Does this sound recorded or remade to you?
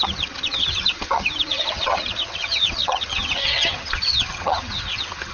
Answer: remade